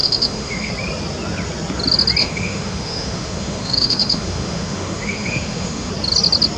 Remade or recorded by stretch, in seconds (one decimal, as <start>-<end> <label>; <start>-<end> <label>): 0.0-0.7 remade; 0.7-2.2 recorded; 2.2-5.9 remade; 5.9-6.6 recorded